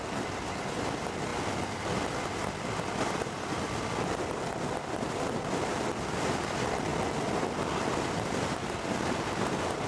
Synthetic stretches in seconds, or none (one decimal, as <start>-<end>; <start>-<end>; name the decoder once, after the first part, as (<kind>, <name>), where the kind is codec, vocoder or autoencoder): none